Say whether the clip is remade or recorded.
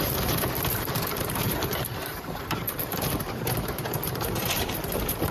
remade